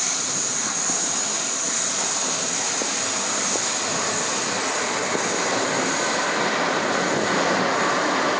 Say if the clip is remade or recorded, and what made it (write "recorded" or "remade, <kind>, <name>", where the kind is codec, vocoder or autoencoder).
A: recorded